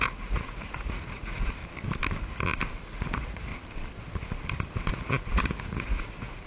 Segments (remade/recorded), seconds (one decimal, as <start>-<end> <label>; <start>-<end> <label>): 0.0-1.6 remade; 1.6-2.8 recorded; 2.8-3.5 remade; 3.5-4.9 recorded; 4.9-6.5 remade

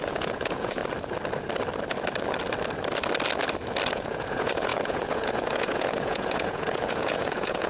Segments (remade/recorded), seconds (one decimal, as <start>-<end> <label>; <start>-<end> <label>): 0.0-0.8 remade; 0.8-3.9 recorded; 3.9-7.7 remade

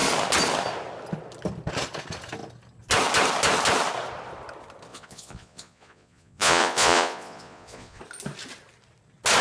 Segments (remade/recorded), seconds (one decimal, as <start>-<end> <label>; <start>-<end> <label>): 0.0-4.9 recorded; 4.9-8.0 remade; 8.0-9.4 recorded